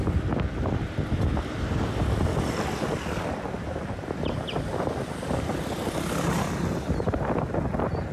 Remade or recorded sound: recorded